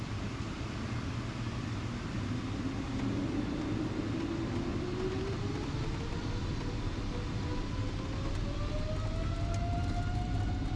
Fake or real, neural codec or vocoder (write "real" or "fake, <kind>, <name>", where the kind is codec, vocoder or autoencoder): real